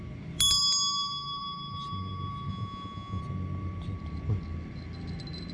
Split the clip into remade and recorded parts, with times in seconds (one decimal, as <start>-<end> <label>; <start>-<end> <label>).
0.0-2.5 recorded; 2.5-3.2 remade; 3.2-5.5 recorded